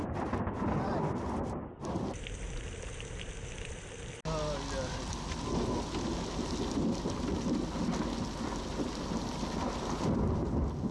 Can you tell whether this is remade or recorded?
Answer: recorded